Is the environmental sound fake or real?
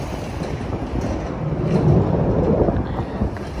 real